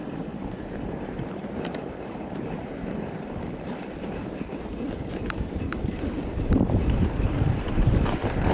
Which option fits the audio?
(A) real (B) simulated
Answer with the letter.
B